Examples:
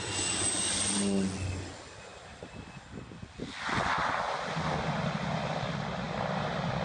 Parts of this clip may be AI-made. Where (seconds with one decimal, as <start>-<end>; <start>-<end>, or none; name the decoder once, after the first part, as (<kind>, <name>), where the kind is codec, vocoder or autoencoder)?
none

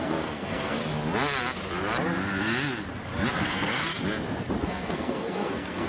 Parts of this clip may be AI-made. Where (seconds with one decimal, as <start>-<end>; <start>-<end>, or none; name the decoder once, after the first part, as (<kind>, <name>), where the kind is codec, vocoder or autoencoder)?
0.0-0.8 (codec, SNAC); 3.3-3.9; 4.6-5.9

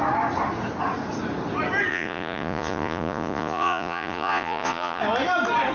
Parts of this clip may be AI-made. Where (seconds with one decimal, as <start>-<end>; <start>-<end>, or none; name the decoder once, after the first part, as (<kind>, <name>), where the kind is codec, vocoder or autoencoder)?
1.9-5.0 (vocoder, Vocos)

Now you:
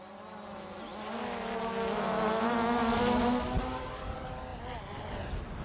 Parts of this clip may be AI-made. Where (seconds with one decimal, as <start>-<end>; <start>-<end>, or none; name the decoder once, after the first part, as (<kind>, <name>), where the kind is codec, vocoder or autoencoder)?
none

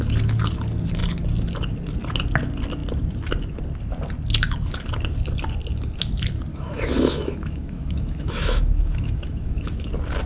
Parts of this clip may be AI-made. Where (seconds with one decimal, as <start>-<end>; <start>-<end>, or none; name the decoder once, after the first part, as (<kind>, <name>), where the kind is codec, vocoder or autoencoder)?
6.5-9.9 (autoencoder, DAC-VAE)

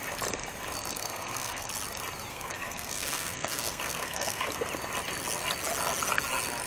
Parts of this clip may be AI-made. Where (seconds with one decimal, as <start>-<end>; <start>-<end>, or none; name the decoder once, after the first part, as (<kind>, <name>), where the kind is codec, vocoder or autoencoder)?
0.9-1.7 (codec, SNAC); 2.3-4.5

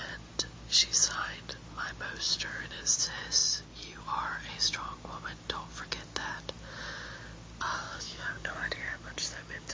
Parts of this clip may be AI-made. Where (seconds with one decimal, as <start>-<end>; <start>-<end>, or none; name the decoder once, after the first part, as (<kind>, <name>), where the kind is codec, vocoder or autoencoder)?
7.9-9.7 (codec, DAC)